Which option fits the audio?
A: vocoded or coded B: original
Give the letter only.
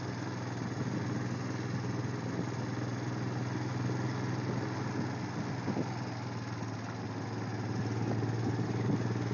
B